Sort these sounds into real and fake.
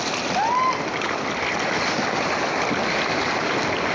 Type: real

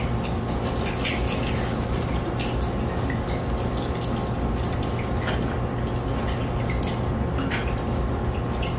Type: real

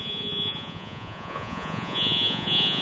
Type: fake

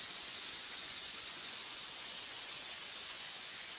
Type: fake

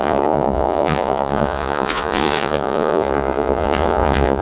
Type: fake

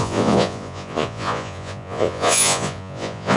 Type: fake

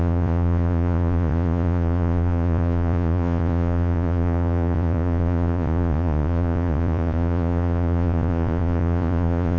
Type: fake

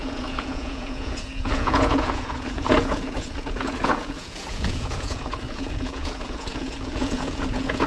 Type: fake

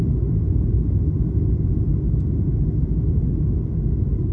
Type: real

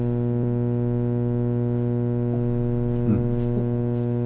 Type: real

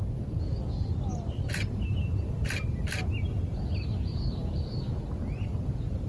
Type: real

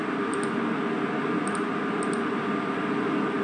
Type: real